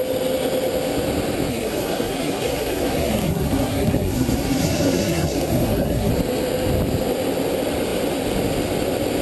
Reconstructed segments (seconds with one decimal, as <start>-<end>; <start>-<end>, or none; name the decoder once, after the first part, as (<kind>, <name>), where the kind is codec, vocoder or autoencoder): 1.5-6.1 (codec, SNAC)